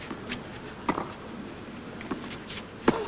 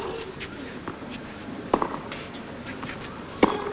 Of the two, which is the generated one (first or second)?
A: second